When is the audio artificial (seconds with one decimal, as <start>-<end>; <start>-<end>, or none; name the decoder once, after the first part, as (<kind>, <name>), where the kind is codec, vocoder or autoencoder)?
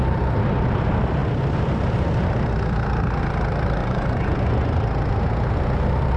3.8-4.7 (vocoder, Vocos)